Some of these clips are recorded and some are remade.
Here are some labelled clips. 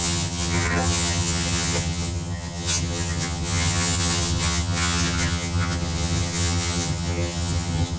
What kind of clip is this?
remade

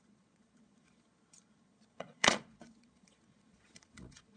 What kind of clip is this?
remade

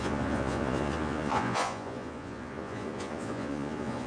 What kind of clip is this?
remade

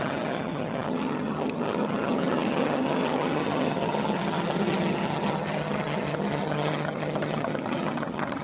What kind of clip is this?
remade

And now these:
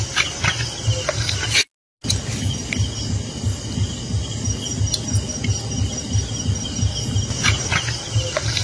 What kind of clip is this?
recorded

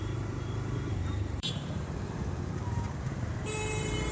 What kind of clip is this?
remade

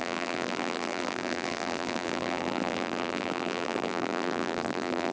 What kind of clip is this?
remade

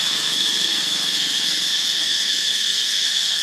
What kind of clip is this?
remade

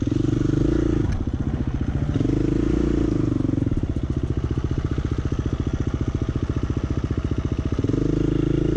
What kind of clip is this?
recorded